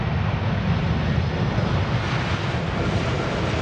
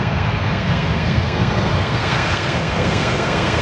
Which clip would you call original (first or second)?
first